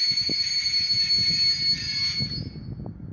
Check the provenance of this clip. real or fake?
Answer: real